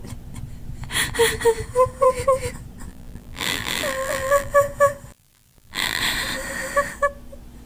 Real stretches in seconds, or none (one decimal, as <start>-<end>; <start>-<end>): 0.0-2.9; 4.5-5.1; 6.0-7.7